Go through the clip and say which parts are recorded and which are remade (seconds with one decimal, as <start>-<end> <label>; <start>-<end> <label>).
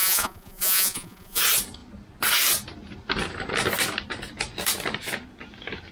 0.0-1.4 remade; 1.4-5.9 recorded